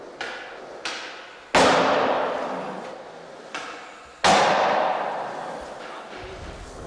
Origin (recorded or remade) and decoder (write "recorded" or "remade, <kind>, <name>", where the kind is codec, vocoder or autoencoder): recorded